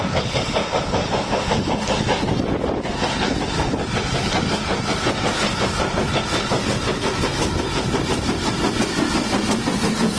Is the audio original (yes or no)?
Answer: yes